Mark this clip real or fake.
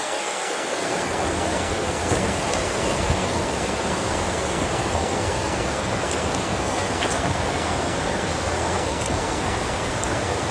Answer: fake